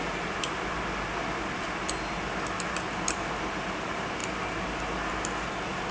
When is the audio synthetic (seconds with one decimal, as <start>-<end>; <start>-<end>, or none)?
none